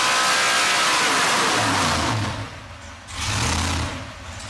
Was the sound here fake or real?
real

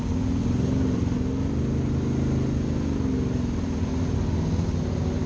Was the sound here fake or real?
real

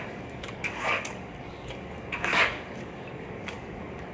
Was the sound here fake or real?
fake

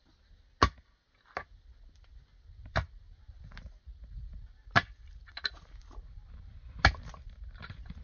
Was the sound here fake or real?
real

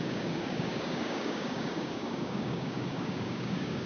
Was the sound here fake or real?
fake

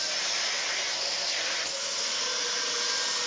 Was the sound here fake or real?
real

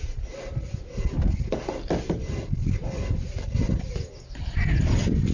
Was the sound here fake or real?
real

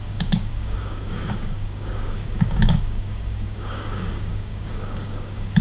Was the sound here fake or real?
fake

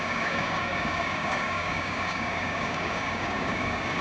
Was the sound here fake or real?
fake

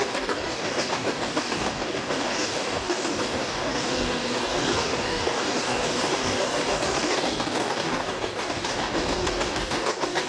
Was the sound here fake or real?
fake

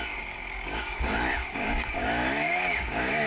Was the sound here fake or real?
fake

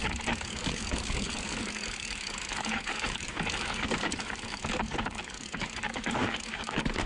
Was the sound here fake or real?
fake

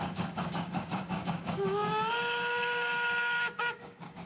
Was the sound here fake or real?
fake